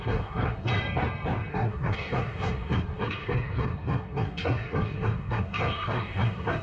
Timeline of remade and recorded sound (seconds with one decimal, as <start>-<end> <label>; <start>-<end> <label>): 0.0-0.7 remade; 0.7-1.5 recorded; 1.5-6.6 remade